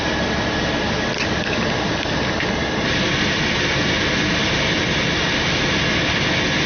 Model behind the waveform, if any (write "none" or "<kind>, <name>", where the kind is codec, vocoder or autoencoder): none